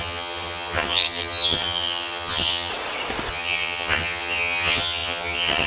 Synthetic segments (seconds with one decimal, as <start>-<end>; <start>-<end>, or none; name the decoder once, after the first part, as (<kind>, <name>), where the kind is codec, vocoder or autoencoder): 0.0-2.7 (vocoder, HiFi-GAN); 3.3-5.7